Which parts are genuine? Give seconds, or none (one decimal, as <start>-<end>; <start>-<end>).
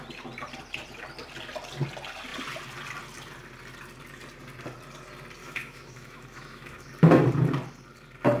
0.0-5.4; 6.9-8.4